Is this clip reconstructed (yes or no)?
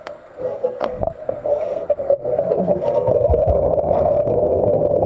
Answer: yes